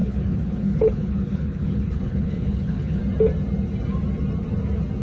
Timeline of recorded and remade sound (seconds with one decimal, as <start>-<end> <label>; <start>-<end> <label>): 0.0-3.0 remade; 3.0-5.0 recorded